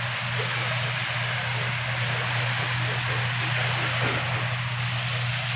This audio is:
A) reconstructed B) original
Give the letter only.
B